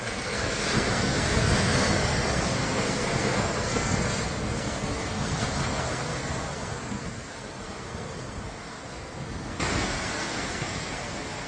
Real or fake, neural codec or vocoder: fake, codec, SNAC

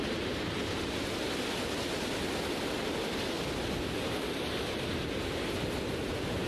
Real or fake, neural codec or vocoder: real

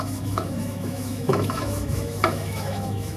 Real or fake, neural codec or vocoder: fake, autoencoder, DAC-VAE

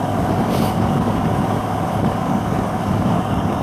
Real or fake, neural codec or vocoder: fake, codec, DAC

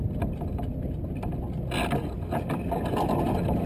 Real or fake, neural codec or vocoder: real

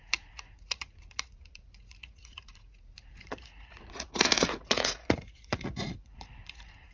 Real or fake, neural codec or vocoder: fake, vocoder, Vocos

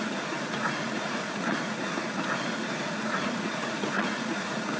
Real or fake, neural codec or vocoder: fake, vocoder, Vocos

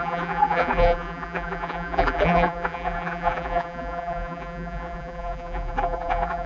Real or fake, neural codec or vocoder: fake, vocoder, BigVGAN v2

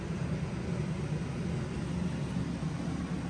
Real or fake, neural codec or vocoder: real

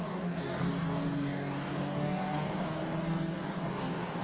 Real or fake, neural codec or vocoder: fake, codec, DAC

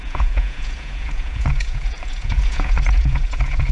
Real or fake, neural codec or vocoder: fake, vocoder, Vocos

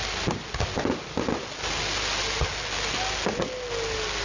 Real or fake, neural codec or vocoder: real